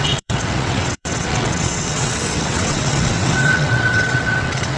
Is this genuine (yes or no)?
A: no